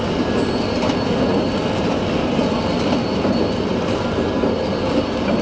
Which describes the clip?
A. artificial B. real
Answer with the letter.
B